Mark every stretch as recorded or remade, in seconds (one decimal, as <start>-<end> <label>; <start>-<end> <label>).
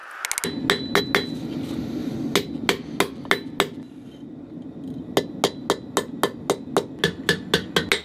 0.0-8.0 recorded